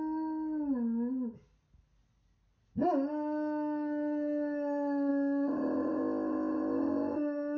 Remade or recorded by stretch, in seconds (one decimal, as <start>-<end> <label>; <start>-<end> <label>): 0.0-7.6 recorded